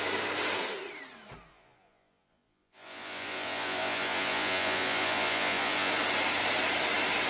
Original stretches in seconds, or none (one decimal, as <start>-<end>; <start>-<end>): 0.0-1.5; 5.9-7.3